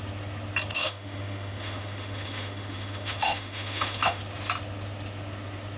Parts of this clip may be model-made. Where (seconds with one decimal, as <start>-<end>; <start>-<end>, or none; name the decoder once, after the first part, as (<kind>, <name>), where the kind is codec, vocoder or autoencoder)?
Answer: 0.7-4.2 (autoencoder, DAC-VAE)